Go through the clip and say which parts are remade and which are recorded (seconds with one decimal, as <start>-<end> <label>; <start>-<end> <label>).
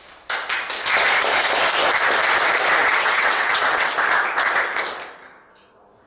0.0-2.8 recorded; 2.8-3.9 remade; 3.9-6.1 recorded